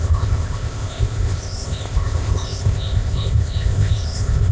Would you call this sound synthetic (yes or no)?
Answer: yes